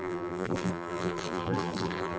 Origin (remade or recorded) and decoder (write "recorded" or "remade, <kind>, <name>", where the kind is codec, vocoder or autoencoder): remade, vocoder, BigVGAN v2